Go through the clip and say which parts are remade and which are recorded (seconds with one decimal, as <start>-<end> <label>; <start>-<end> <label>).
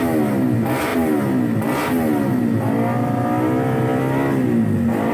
0.0-5.1 recorded